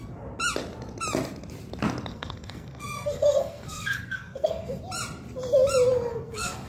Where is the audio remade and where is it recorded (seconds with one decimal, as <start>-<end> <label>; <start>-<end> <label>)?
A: 0.0-2.1 recorded; 2.1-4.8 remade; 4.8-6.1 recorded; 6.1-6.7 remade